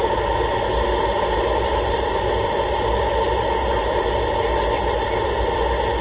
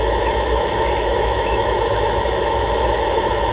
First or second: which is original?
first